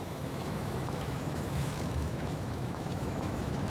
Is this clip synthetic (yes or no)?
yes